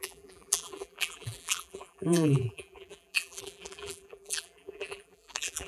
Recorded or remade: remade